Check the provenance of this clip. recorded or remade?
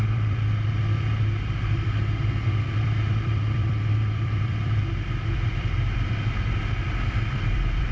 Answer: remade